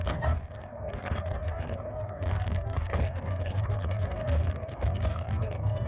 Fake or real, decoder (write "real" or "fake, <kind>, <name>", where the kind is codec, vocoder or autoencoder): fake, codec, DAC